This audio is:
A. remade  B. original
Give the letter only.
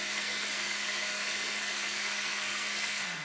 A